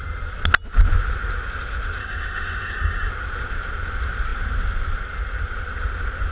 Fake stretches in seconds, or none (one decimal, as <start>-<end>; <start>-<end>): 2.0-3.1